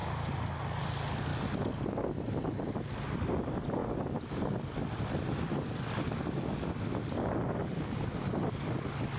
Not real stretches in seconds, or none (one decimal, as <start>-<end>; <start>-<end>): none